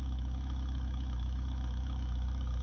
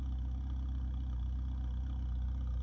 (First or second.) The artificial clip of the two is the first